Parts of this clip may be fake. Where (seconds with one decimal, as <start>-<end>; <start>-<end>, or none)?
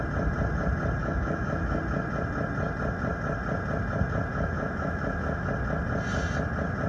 1.0-1.8; 4.3-5.5